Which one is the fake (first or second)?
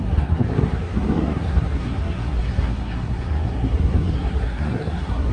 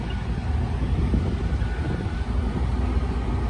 first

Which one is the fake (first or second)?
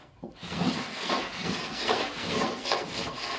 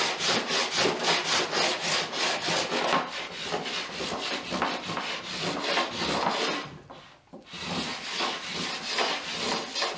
first